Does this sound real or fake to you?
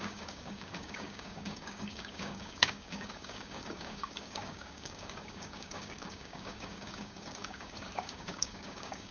fake